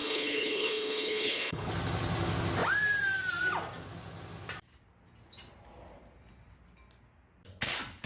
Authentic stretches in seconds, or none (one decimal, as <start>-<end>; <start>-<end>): 1.7-8.1